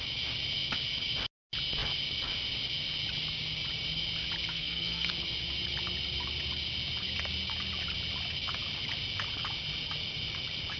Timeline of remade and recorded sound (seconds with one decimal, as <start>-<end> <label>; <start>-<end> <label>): 0.0-4.5 recorded; 4.5-5.1 remade; 5.1-10.8 recorded